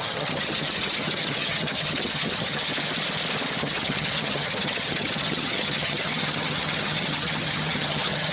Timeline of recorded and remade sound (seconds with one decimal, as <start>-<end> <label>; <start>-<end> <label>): 0.0-2.7 remade; 2.7-3.6 recorded; 3.6-8.3 remade